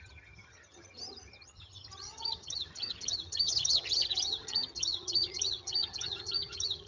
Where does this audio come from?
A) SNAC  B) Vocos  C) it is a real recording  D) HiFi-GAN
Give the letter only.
D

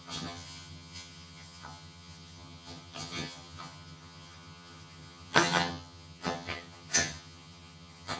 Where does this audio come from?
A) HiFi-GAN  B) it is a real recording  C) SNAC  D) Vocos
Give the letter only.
A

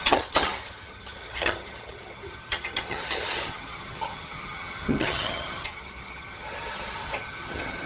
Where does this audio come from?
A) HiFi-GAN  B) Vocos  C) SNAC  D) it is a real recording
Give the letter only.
A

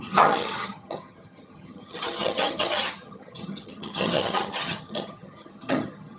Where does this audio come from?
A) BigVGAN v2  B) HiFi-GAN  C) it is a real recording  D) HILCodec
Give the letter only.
B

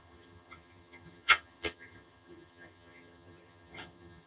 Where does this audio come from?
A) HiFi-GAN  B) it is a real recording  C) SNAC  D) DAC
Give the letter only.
A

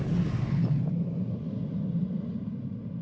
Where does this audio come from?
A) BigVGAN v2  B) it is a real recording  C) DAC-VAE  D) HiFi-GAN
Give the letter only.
B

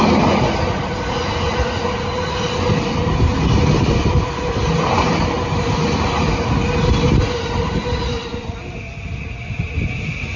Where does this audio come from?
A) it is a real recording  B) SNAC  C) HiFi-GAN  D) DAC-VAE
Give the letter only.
A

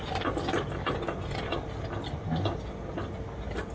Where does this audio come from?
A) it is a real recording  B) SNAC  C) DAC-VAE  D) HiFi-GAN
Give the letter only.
A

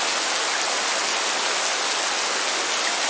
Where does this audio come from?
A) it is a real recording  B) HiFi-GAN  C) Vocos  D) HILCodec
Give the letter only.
A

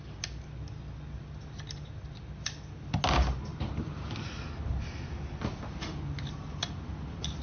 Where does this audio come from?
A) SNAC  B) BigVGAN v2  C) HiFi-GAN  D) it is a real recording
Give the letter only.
D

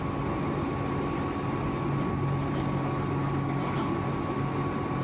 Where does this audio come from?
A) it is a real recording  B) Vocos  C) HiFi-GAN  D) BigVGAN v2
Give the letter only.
A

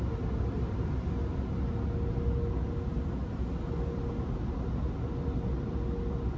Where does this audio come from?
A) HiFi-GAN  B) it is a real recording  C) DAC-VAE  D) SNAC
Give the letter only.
B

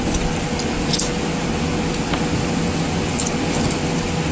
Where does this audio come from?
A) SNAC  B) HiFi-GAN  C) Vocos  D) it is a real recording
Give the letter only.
D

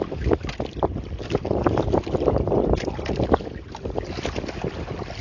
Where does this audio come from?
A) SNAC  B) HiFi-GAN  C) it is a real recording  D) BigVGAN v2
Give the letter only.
C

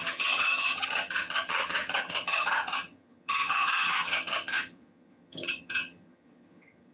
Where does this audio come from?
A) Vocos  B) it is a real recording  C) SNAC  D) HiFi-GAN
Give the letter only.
D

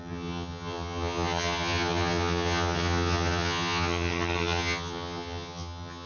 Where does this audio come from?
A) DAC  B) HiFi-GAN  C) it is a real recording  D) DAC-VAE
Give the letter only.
B